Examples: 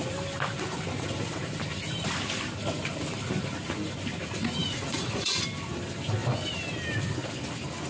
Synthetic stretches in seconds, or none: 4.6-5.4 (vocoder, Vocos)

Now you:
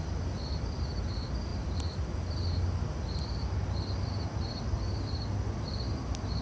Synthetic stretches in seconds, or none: 1.5-2.1 (vocoder, BigVGAN v2)

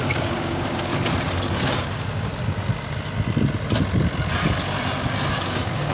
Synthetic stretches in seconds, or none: 0.0-0.9 (codec, DAC); 1.7-2.3; 5.3-5.9